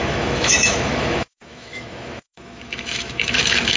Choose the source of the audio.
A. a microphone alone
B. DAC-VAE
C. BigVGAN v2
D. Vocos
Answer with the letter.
B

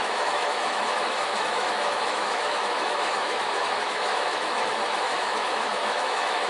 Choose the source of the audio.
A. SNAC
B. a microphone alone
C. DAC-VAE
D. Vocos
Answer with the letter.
C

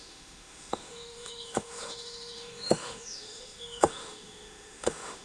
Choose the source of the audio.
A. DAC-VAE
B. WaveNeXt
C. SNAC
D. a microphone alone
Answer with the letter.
A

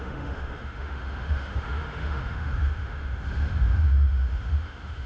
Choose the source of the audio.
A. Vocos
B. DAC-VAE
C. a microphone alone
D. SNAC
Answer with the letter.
B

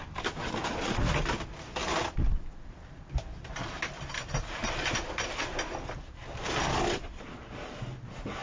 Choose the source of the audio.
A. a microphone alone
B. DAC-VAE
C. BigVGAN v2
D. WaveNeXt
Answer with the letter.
A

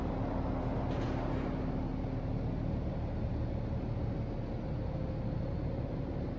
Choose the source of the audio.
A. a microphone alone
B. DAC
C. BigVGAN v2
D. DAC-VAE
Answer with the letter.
A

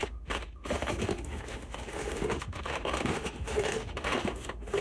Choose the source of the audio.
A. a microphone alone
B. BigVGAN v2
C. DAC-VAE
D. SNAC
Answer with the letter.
C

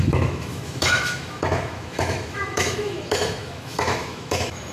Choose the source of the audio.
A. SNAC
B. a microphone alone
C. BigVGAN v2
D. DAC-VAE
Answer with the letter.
D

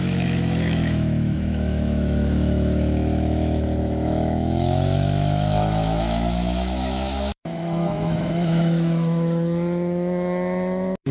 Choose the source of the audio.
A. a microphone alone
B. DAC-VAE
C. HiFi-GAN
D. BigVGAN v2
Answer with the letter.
B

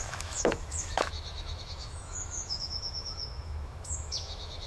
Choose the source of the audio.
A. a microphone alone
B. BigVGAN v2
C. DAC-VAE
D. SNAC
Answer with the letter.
C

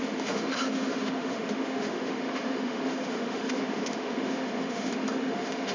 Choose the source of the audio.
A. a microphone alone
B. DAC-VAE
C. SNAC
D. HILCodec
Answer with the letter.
B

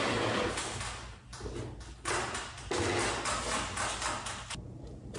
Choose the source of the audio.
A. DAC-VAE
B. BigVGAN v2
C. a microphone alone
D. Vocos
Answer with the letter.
C